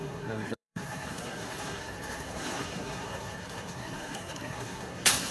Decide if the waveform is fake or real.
fake